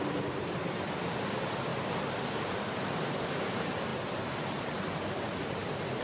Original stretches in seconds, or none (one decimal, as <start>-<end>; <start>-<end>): 1.7-2.9